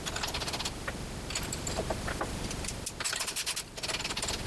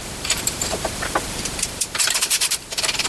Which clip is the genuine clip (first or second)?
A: first